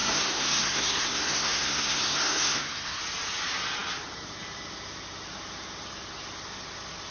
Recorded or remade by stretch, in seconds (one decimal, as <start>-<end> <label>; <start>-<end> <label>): 0.0-3.0 remade; 3.0-7.1 recorded